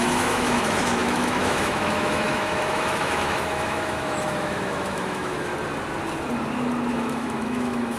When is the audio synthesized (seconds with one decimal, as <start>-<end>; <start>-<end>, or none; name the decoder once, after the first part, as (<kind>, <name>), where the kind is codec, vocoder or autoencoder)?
0.0-5.5 (autoencoder, DAC-VAE); 6.9-8.0